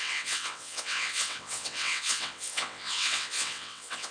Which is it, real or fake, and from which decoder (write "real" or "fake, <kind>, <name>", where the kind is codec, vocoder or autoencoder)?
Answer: fake, vocoder, WaveNeXt